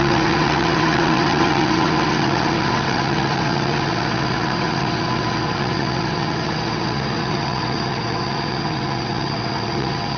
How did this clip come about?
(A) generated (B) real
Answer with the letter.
A